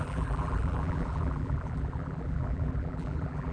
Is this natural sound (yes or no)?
no